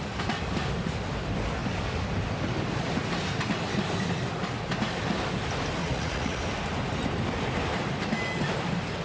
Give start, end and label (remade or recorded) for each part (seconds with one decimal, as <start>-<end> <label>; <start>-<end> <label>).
0.0-5.8 recorded; 5.8-6.4 remade; 6.4-9.0 recorded